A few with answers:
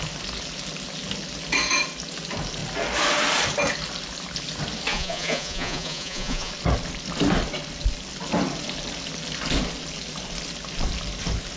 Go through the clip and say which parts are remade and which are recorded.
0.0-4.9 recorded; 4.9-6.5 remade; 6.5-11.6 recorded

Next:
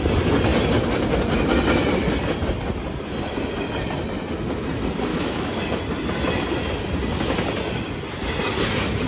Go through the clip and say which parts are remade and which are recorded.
0.0-5.1 recorded; 5.1-5.6 remade; 5.6-9.1 recorded